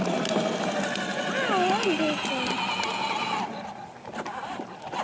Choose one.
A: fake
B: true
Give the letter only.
B